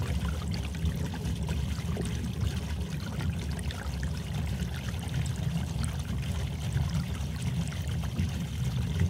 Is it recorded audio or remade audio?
recorded